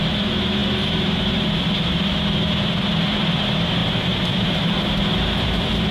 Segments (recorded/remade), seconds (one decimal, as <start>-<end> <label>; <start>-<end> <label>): 0.0-5.9 remade